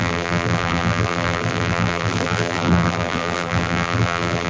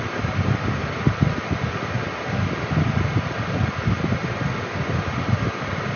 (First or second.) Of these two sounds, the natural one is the second